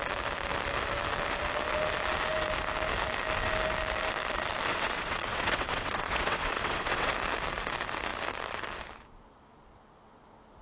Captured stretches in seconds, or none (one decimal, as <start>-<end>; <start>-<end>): 0.0-4.7; 7.1-10.6